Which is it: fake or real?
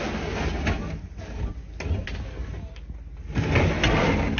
real